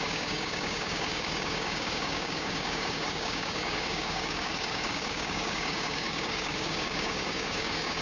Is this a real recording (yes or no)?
no